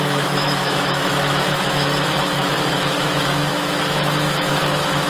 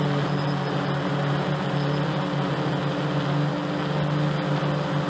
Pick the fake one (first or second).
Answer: first